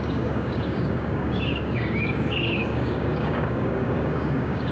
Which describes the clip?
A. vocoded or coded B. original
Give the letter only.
A